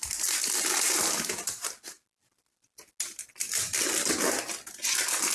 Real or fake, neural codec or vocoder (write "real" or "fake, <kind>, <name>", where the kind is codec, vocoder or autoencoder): real